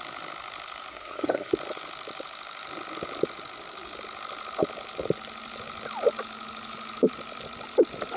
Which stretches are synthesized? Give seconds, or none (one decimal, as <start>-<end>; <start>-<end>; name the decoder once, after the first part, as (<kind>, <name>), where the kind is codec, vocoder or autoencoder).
0.9-1.5 (codec, SNAC)